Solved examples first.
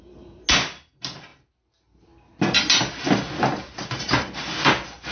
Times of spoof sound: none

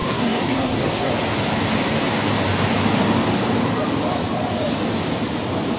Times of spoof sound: 0.0-1.1 (codec, SNAC)